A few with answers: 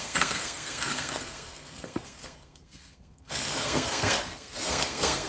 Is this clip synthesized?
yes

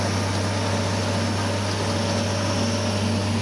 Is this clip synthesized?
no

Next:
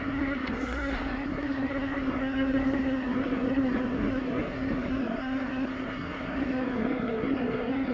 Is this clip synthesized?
yes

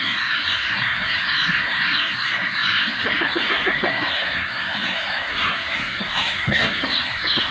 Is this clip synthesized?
yes